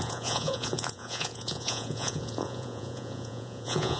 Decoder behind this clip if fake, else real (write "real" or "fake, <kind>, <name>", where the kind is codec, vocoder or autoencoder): fake, vocoder, Vocos